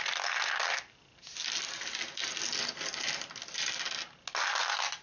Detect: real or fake real